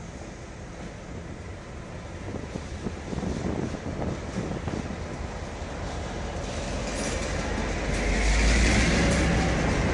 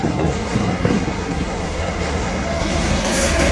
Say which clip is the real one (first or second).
first